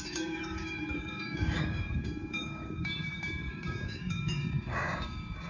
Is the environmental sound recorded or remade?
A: remade